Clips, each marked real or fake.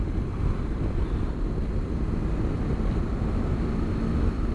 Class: real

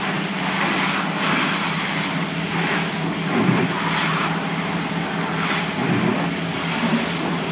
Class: fake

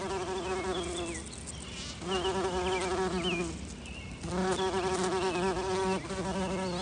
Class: real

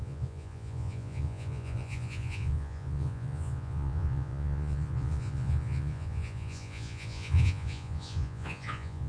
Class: fake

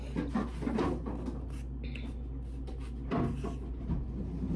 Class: real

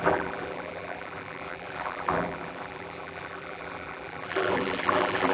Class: fake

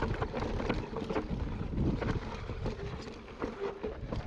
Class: real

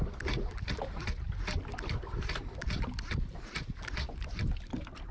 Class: real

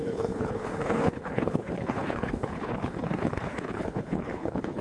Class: fake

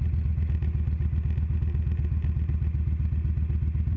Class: real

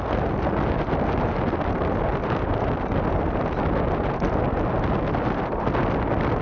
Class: real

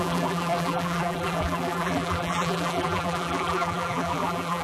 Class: fake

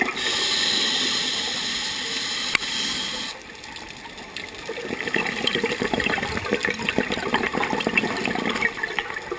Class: real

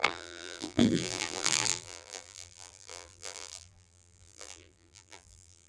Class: fake